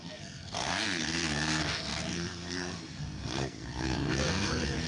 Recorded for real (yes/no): no